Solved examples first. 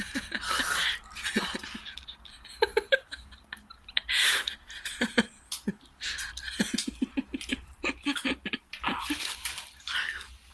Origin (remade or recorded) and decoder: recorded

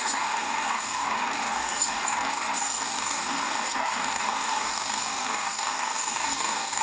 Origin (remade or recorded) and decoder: remade, codec, DAC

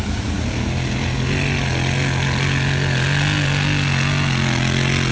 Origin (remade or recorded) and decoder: recorded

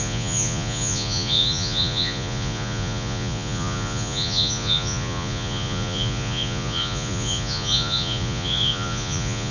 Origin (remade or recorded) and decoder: remade, vocoder, Vocos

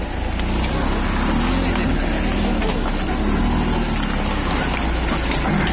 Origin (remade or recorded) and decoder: recorded